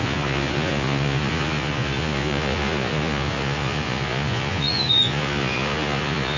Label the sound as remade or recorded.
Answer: remade